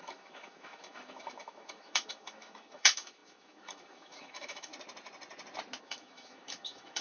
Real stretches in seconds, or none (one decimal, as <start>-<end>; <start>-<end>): 4.7-5.8